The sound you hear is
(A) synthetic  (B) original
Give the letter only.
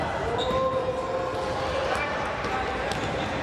B